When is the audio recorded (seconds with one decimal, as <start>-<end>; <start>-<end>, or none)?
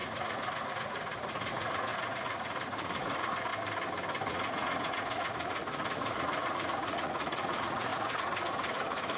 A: 3.5-4.3